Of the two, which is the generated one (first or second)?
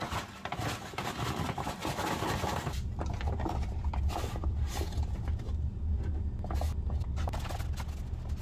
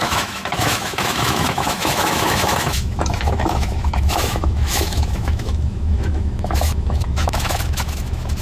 second